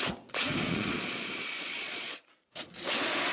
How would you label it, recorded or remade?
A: remade